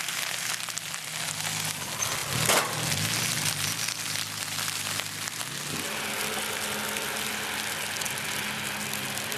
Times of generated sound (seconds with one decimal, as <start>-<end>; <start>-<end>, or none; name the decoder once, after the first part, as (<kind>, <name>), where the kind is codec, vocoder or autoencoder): none